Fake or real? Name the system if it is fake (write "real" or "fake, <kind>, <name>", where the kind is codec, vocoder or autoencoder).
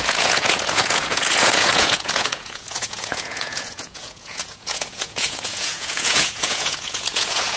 fake, vocoder, Vocos